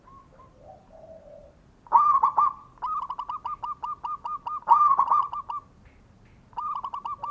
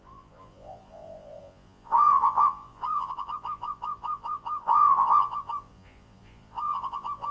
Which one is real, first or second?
first